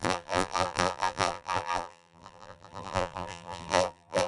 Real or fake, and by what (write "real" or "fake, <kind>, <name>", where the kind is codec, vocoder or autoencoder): fake, vocoder, BigVGAN v2